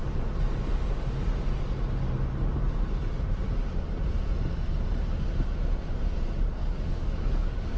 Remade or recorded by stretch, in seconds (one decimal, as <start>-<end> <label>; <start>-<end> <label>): 0.0-6.6 recorded; 6.6-7.8 remade